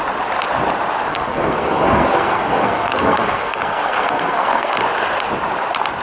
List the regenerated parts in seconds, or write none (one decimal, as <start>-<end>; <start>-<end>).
1.1-4.7